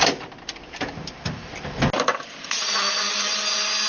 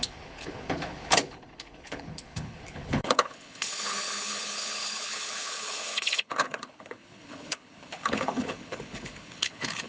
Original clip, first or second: first